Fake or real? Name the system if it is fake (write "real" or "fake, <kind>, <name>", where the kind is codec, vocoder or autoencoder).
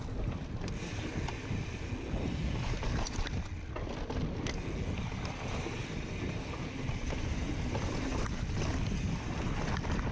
real